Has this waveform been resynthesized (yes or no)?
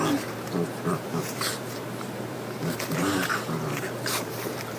yes